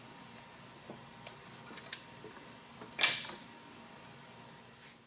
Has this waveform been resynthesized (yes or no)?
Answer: no